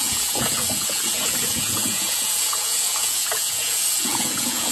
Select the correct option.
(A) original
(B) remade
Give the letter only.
B